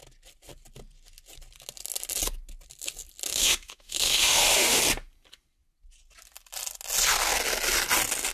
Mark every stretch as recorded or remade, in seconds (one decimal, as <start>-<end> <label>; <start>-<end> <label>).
0.0-3.3 recorded; 3.3-4.8 remade; 4.8-8.3 recorded